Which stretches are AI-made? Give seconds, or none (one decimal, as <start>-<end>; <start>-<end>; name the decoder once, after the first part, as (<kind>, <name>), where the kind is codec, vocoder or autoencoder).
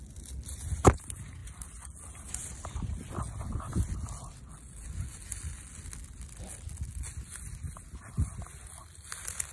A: none